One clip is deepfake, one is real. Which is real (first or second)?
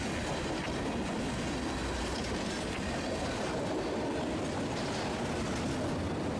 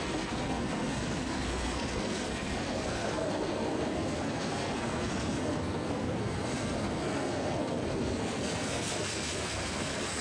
first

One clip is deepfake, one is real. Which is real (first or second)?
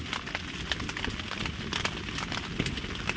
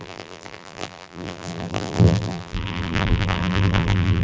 first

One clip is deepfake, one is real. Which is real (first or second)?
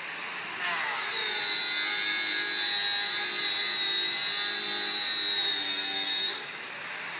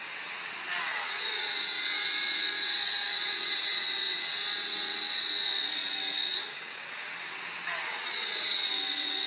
first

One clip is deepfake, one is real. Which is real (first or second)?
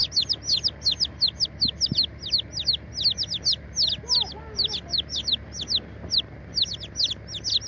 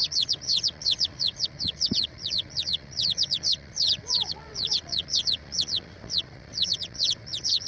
first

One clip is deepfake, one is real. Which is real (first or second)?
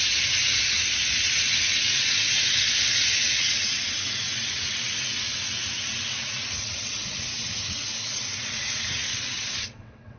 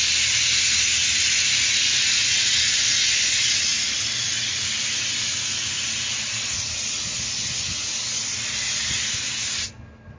second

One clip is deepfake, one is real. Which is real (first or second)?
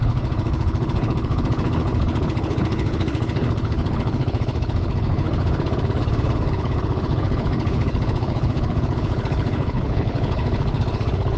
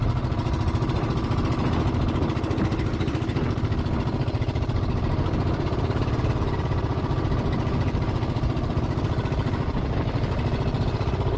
second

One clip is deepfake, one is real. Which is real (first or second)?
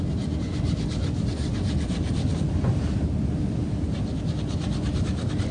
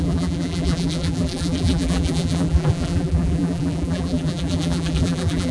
first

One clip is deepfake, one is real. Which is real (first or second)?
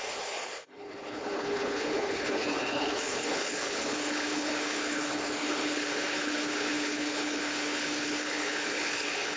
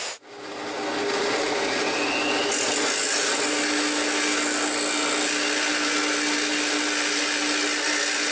second